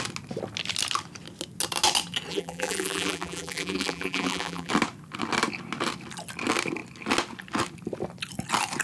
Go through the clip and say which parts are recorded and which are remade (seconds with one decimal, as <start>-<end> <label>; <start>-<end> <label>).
0.0-2.3 recorded; 2.3-4.7 remade; 4.7-8.8 recorded